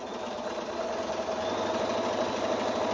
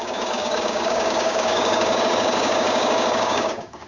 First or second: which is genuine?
first